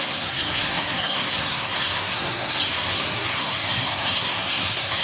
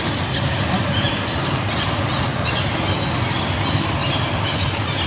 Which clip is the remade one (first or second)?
first